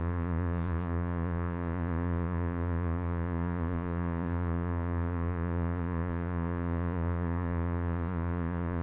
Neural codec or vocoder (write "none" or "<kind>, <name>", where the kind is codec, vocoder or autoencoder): vocoder, Vocos